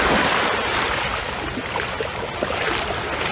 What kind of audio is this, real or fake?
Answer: real